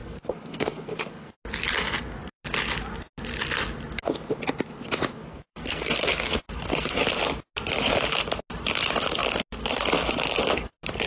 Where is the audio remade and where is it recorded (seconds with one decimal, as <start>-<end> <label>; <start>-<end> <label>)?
0.0-1.3 remade; 1.3-5.2 recorded; 5.2-7.0 remade; 7.0-11.1 recorded